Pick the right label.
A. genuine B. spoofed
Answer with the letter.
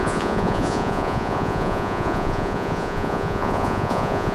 B